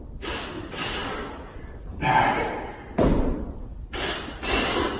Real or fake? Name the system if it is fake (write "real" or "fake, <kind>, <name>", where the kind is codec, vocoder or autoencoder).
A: real